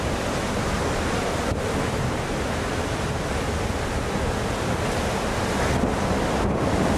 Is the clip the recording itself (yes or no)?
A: no